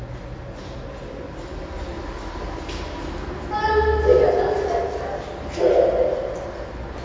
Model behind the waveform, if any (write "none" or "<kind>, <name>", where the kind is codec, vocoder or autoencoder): none